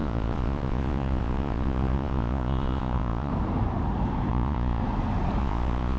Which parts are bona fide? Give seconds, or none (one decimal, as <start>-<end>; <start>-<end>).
3.3-4.3; 4.8-5.4